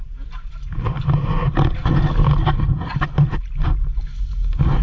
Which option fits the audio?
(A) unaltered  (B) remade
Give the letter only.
A